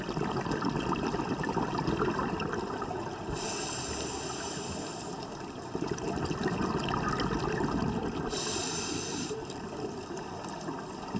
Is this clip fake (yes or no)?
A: yes